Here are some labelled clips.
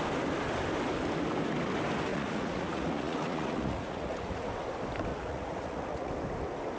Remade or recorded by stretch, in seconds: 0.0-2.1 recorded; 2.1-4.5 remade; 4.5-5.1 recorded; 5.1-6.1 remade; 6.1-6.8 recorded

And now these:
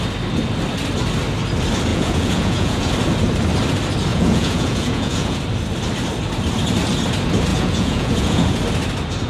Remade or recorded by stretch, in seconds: 0.0-1.9 recorded; 1.9-2.9 remade; 2.9-4.1 recorded; 4.1-5.4 remade; 5.4-7.5 recorded; 7.5-8.6 remade; 8.6-9.3 recorded

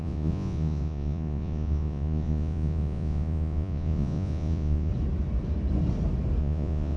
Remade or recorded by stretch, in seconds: 0.0-4.9 remade; 4.9-6.4 recorded; 6.4-7.0 remade

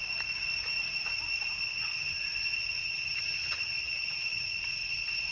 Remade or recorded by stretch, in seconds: 0.0-1.6 recorded; 1.6-2.2 remade; 2.2-2.8 recorded; 2.8-4.6 remade; 4.6-5.3 recorded

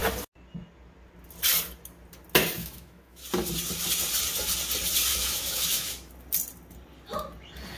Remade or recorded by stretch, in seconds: 0.0-2.6 recorded; 2.6-3.2 remade; 3.2-5.1 recorded; 5.1-6.1 remade; 6.1-7.8 recorded

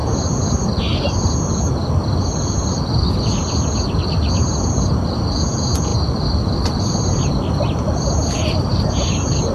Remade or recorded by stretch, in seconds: 0.0-9.5 recorded

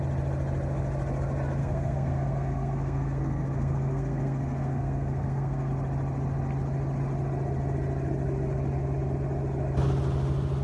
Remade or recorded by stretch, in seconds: 0.0-1.6 recorded; 1.6-5.7 remade; 5.7-10.6 recorded